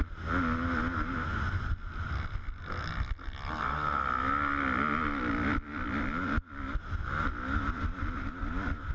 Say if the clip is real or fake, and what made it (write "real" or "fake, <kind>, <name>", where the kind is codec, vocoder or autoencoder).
real